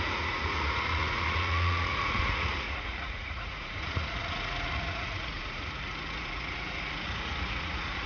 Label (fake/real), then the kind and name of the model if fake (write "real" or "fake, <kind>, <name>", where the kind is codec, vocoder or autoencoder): fake, vocoder, Vocos